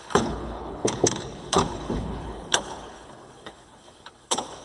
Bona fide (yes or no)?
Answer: no